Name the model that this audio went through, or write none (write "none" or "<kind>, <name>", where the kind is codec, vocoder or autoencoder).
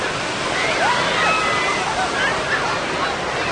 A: none